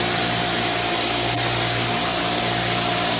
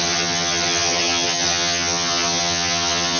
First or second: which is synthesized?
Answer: second